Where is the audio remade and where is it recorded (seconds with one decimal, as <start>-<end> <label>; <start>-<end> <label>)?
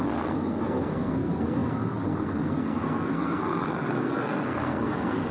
0.0-5.3 remade